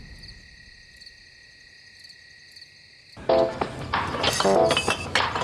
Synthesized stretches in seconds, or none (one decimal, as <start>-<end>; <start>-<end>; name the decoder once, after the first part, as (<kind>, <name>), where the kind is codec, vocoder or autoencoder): none